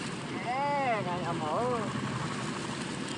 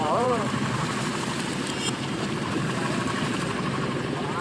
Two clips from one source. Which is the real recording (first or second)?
first